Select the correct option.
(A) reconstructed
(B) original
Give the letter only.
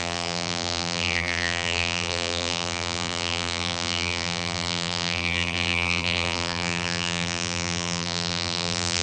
A